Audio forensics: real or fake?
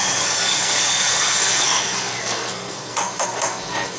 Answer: fake